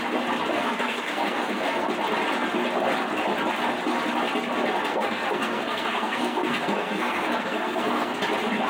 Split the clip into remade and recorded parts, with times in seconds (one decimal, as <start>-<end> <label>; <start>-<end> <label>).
0.0-0.5 recorded; 0.5-1.9 remade; 1.9-4.9 recorded; 4.9-8.2 remade; 8.2-8.7 recorded